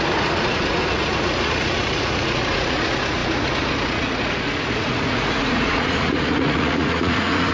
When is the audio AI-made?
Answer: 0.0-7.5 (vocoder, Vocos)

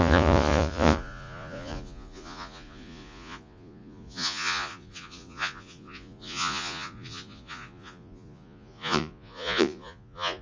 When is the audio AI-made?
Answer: 0.0-10.4 (vocoder, Vocos)